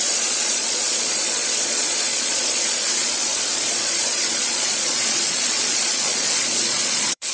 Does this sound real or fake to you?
fake